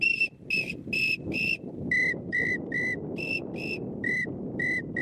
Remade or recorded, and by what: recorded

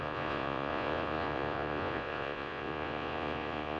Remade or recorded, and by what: remade, vocoder, Vocos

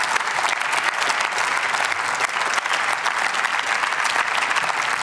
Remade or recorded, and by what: recorded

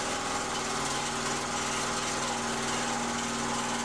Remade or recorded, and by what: recorded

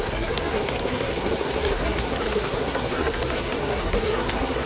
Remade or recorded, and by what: remade, codec, SNAC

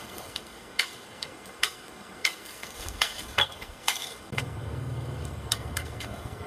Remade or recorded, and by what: remade, codec, SNAC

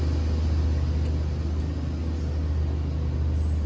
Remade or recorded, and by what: recorded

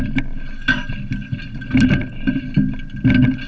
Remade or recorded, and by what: recorded